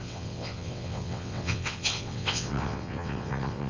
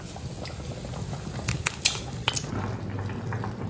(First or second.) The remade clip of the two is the first